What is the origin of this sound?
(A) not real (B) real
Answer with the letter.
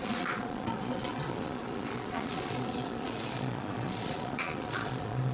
A